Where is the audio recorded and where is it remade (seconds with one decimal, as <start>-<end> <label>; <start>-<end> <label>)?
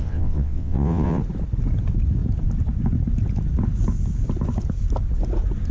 0.0-1.2 remade; 1.2-5.7 recorded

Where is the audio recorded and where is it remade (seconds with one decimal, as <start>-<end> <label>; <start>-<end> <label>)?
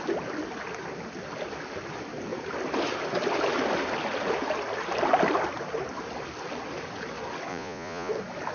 0.0-7.5 recorded; 7.5-8.1 remade; 8.1-8.5 recorded